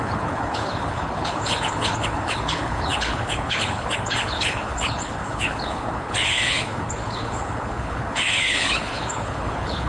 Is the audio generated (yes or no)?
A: yes